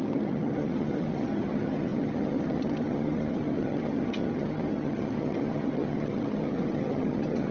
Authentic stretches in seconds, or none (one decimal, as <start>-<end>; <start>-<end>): none